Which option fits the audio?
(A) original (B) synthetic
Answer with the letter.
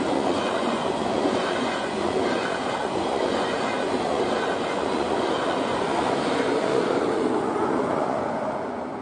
B